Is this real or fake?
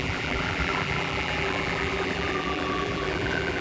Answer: fake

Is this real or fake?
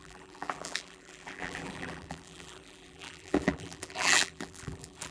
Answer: fake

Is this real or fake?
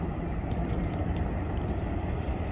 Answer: fake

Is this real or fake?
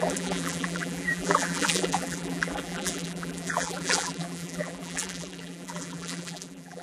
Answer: fake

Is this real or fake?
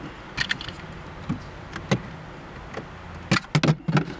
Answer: real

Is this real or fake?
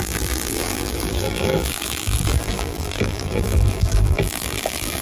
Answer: fake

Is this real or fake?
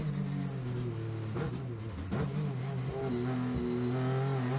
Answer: real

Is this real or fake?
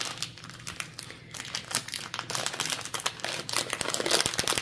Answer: real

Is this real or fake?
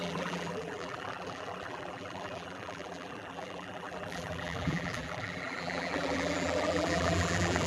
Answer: fake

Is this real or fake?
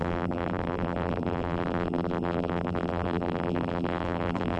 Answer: fake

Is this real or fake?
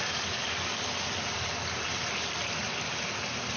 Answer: real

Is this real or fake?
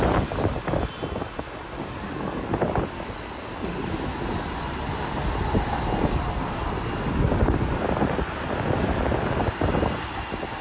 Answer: real